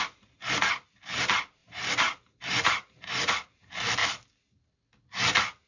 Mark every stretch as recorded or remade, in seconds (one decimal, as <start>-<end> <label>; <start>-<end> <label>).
0.0-1.6 recorded; 1.6-3.3 remade; 3.3-5.7 recorded